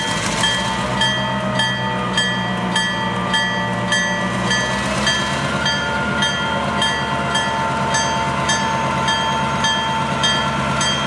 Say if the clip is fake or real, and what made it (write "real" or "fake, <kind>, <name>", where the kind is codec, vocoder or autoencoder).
real